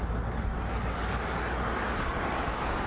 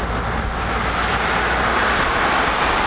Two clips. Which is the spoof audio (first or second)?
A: first